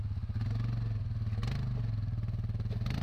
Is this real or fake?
real